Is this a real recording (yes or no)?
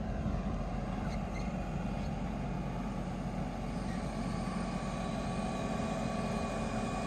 yes